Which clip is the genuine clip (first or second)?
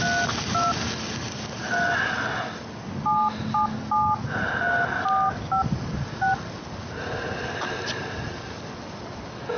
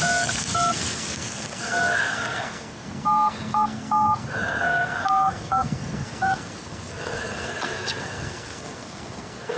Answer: first